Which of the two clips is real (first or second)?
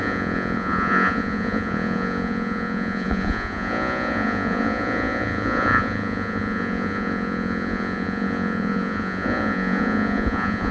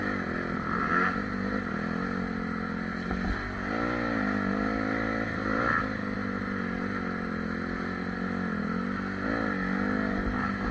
second